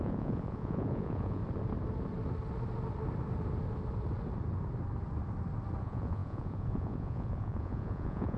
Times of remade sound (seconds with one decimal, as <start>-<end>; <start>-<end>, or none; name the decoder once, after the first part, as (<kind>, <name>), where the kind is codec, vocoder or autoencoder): 0.0-1.4 (vocoder, Vocos); 5.8-8.4